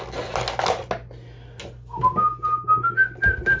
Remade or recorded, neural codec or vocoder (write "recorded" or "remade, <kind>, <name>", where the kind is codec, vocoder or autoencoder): recorded